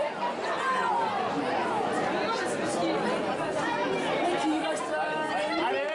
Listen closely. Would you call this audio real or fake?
real